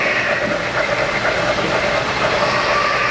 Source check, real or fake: real